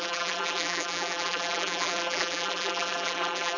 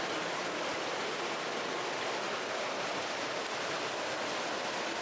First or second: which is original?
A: second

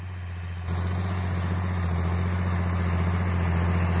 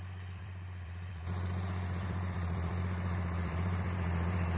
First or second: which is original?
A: first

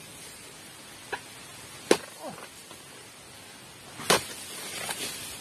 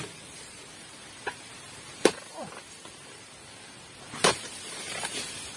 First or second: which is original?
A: first